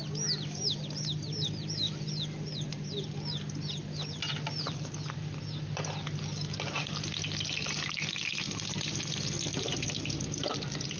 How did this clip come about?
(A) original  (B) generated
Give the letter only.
A